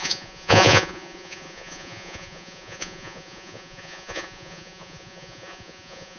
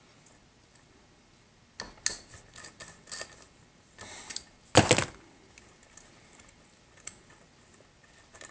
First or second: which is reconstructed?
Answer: first